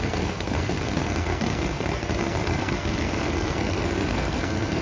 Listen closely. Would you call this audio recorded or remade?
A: remade